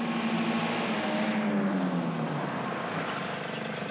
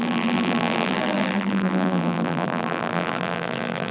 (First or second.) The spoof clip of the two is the second